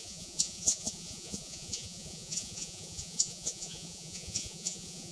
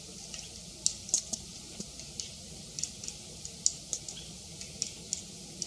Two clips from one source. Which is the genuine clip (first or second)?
second